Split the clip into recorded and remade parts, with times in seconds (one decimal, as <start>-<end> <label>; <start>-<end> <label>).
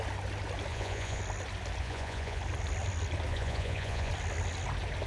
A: 0.0-0.7 recorded; 0.7-1.2 remade; 1.2-1.8 recorded; 1.8-2.4 remade; 2.4-3.3 recorded; 3.3-4.1 remade; 4.1-5.1 recorded